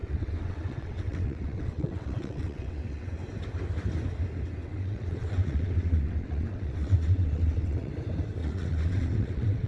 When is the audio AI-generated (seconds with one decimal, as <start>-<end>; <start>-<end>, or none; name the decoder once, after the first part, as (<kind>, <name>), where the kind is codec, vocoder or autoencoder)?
0.0-3.2 (vocoder, WaveNeXt); 4.6-7.9; 8.4-9.7

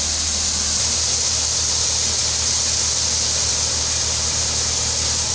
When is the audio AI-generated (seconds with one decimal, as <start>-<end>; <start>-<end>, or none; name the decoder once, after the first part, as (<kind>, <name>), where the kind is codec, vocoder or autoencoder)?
none